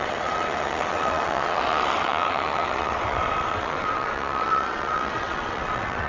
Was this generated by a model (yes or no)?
yes